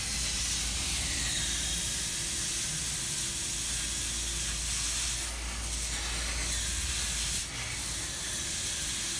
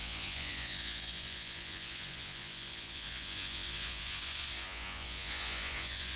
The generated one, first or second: second